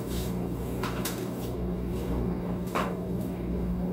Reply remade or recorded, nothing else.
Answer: remade